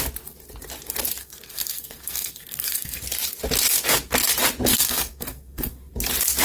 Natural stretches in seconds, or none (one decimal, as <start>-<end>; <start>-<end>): 0.0-1.2; 3.0-4.7; 5.9-6.4